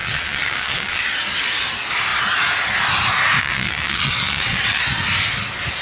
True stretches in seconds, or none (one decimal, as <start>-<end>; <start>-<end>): 1.0-3.4; 4.8-5.8